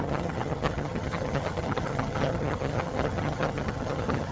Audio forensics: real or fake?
fake